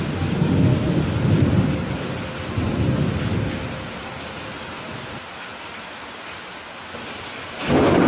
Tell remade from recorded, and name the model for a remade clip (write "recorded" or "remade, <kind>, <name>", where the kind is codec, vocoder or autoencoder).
recorded